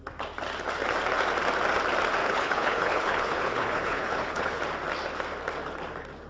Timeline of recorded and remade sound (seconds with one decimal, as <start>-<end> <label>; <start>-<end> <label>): 0.0-2.2 recorded; 2.2-4.6 remade; 4.6-6.3 recorded